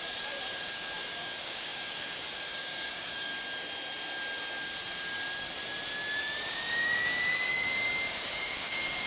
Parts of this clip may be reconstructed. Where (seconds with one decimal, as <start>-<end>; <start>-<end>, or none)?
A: 0.0-3.3; 6.2-9.1